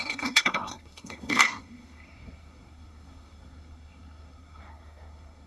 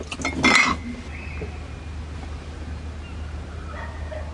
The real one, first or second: second